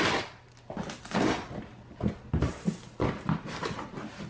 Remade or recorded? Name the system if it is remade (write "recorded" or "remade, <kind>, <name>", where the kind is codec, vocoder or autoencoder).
recorded